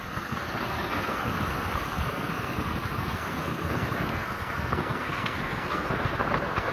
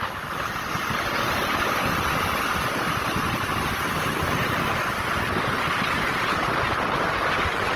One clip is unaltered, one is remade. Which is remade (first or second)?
first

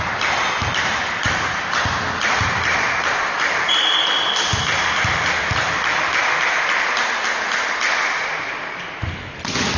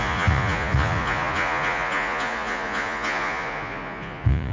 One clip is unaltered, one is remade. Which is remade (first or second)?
second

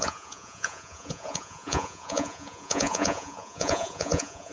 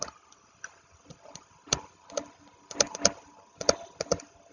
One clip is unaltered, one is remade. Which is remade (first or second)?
first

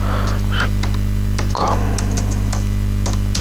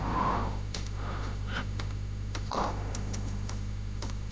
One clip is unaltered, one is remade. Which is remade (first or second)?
second